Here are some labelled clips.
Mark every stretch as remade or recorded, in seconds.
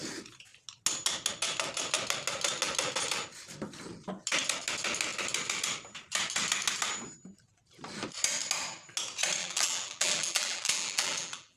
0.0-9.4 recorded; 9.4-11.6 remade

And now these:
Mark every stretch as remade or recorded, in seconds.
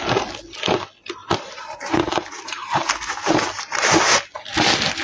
0.0-1.2 recorded; 1.2-3.9 remade; 3.9-5.0 recorded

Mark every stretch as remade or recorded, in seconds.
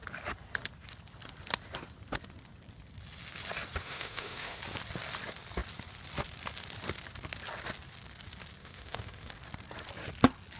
0.0-3.8 recorded; 3.8-4.6 remade; 4.6-8.6 recorded; 8.6-9.3 remade; 9.3-10.6 recorded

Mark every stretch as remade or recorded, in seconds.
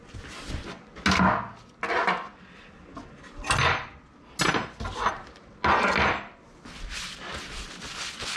0.0-8.4 recorded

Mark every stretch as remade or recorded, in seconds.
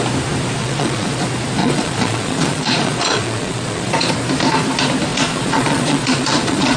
0.0-0.6 recorded; 0.6-1.2 remade; 1.2-1.6 recorded; 1.6-4.1 remade; 4.1-5.1 recorded; 5.1-6.8 remade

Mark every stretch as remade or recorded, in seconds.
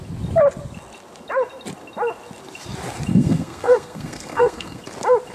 0.0-3.1 recorded; 3.1-4.8 remade; 4.8-5.3 recorded